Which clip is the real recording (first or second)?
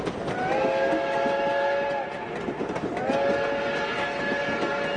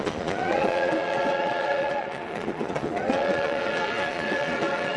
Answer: first